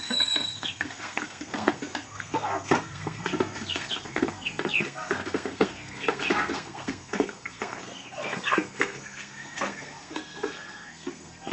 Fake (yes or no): yes